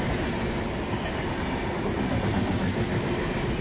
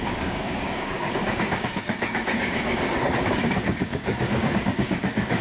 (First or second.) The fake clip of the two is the second